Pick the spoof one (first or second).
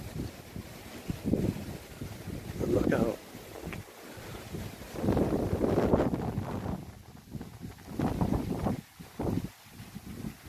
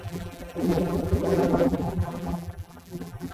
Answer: second